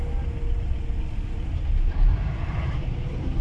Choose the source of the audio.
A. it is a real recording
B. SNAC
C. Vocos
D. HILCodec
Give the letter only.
A